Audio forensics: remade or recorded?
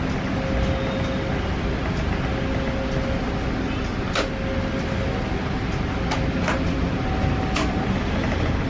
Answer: recorded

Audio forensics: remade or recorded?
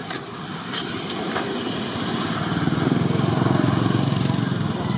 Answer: recorded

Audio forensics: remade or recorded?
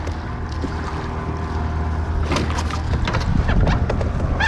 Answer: recorded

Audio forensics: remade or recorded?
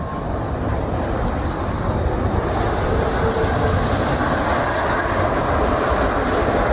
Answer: recorded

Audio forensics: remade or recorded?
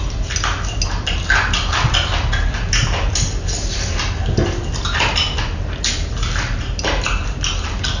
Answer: recorded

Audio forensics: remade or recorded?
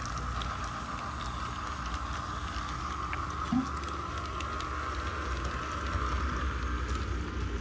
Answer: recorded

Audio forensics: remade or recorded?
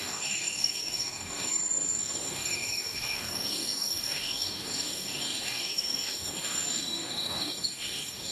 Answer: remade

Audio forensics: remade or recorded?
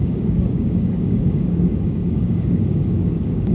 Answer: remade